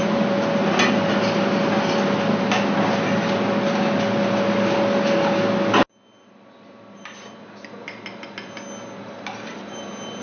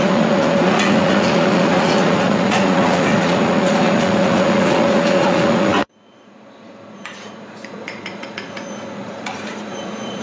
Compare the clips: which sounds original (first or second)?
first